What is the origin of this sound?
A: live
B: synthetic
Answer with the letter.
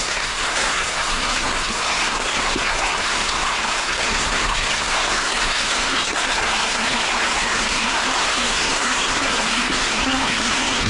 B